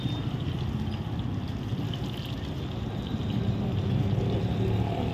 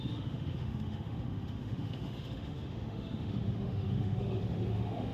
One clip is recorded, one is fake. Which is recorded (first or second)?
first